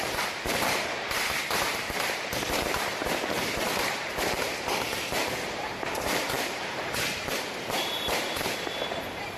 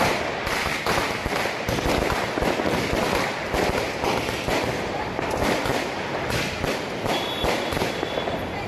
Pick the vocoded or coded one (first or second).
first